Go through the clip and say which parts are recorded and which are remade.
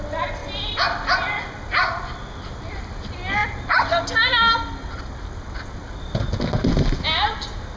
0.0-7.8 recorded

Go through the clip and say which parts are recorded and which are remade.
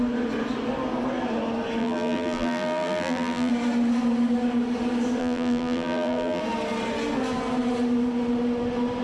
0.0-1.8 recorded; 1.8-3.5 remade; 3.5-5.2 recorded; 5.2-6.4 remade; 6.4-9.0 recorded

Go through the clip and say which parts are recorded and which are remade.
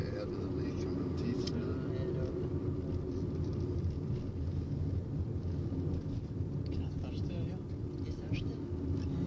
0.0-9.3 recorded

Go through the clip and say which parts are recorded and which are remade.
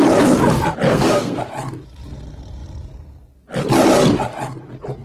0.0-0.9 recorded; 0.9-1.4 remade; 1.4-5.0 recorded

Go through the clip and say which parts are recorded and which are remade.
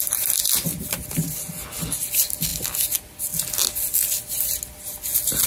0.0-5.5 recorded